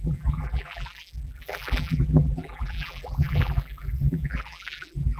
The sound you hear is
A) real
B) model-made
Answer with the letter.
B